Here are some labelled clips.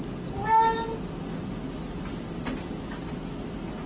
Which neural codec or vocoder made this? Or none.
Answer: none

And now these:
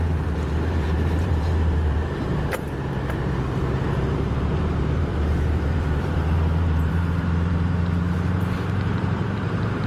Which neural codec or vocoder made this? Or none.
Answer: vocoder, BigVGAN v2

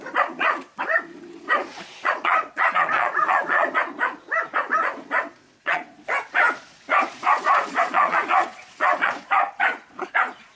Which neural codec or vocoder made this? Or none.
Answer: vocoder, Vocos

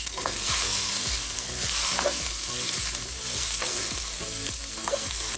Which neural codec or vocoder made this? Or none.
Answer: codec, SNAC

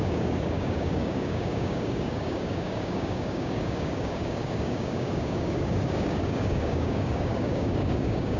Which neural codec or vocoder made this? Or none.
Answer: codec, DAC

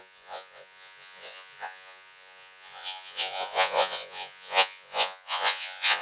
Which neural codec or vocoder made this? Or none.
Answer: vocoder, Vocos